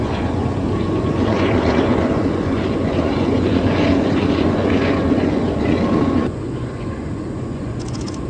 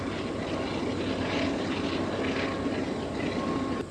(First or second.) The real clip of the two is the second